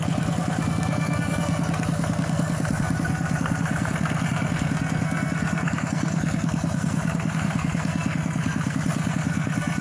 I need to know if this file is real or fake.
fake